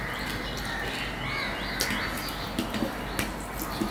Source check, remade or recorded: recorded